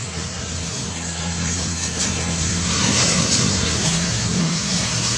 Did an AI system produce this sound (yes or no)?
yes